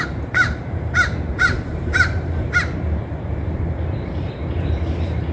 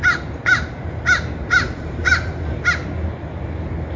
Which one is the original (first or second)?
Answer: second